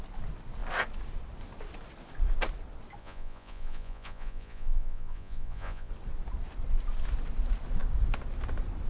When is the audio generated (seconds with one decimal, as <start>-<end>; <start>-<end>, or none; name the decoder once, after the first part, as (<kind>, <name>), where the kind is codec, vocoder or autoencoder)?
3.0-5.9 (vocoder, Vocos)